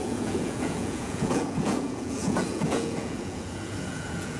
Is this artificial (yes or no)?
yes